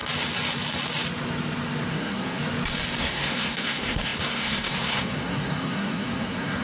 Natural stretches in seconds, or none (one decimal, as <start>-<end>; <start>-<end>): 0.0-1.9; 2.4-3.0